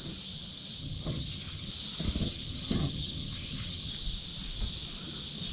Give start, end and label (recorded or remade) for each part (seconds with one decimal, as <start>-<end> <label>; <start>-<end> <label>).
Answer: 0.0-0.8 recorded; 0.8-1.7 remade; 1.7-2.2 recorded; 2.2-3.9 remade; 3.9-5.5 recorded

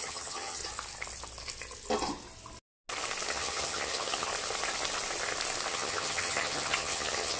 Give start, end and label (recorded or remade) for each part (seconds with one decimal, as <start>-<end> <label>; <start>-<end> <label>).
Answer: 0.0-0.6 remade; 0.6-3.3 recorded; 3.3-4.3 remade; 4.3-5.7 recorded; 5.7-7.4 remade